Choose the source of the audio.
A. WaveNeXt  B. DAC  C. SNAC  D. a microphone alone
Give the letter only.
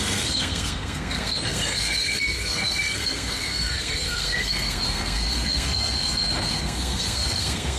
C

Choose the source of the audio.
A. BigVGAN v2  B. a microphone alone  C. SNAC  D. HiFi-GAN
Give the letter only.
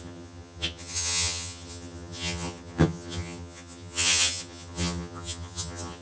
D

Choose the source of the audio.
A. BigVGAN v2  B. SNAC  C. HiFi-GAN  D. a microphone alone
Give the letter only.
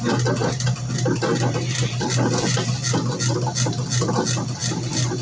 D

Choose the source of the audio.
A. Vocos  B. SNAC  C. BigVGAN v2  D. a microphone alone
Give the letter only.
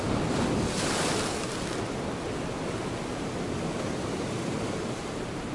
D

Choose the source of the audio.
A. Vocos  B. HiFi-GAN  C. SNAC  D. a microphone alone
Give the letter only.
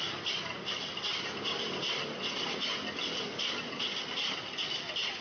D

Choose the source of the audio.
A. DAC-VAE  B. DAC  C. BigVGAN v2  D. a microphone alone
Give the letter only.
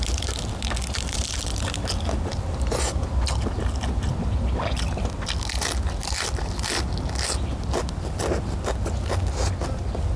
D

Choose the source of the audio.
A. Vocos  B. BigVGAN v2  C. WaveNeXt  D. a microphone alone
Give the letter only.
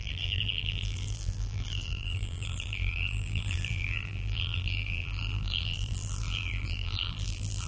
B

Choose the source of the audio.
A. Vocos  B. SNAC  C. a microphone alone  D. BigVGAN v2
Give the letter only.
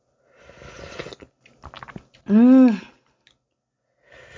C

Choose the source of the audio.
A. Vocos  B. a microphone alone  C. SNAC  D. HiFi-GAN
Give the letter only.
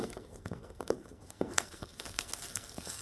C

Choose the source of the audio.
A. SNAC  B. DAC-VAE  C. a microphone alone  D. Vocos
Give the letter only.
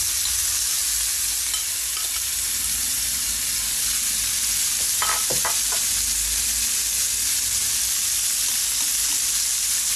C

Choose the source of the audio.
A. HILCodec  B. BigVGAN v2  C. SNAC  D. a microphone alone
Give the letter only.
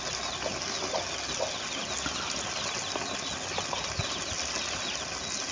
D